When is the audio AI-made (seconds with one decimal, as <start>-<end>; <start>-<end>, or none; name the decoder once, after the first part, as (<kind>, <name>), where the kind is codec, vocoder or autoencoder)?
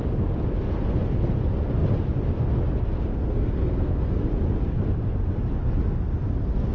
3.1-4.2 (codec, SNAC)